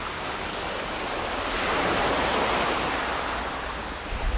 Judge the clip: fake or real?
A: real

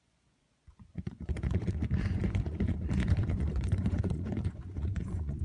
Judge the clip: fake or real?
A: fake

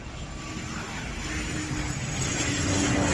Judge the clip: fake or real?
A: real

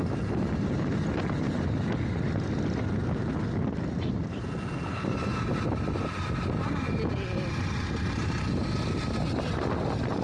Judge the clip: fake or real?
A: real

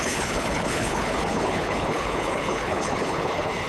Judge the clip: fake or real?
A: fake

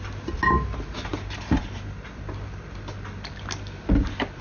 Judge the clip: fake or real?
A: real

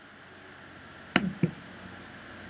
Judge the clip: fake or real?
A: real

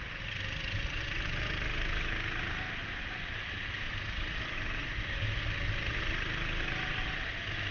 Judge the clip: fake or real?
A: real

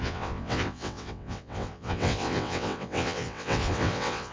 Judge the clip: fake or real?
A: fake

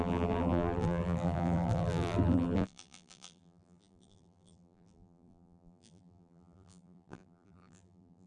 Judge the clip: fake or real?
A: fake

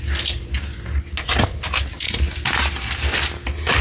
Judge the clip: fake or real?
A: real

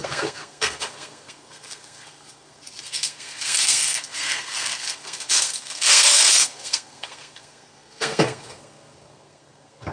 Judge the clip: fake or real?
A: fake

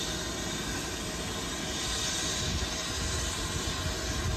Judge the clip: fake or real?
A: real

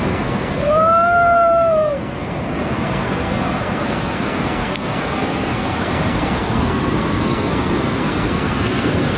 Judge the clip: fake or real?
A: fake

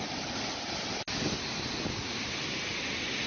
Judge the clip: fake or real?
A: real